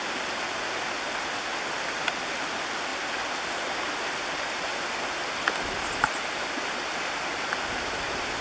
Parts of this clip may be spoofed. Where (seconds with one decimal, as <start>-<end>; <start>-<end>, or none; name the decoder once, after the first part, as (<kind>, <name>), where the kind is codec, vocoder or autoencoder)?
none